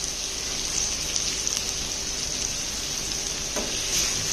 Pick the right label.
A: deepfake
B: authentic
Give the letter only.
B